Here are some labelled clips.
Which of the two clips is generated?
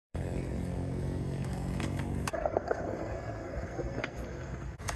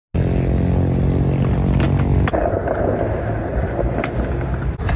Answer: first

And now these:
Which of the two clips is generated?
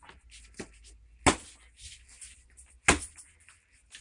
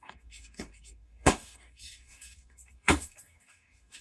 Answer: second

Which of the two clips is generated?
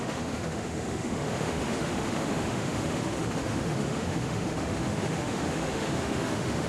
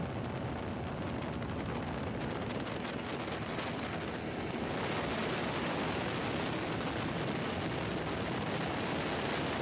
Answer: first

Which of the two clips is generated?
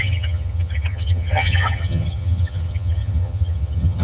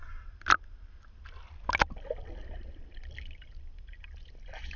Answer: first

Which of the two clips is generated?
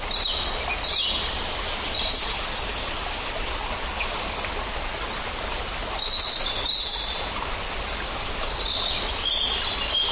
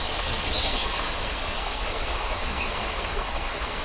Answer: second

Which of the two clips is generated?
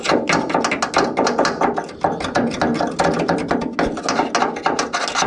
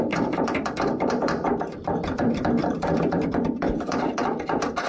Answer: second